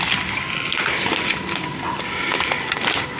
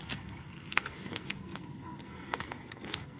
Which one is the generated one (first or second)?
second